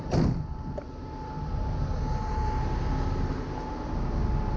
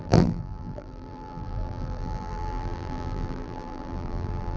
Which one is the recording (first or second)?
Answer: first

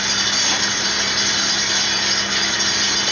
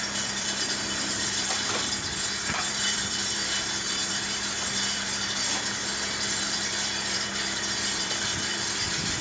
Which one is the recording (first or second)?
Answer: first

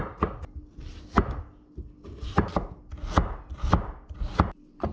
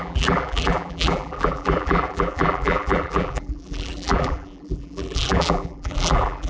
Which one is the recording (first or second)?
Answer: first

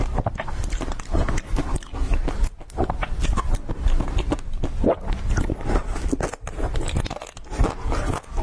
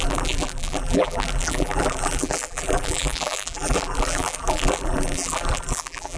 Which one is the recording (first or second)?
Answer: first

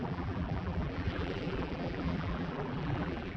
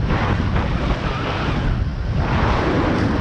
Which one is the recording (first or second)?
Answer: second